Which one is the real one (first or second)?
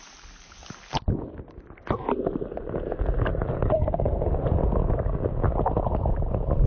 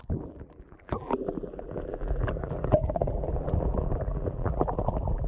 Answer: first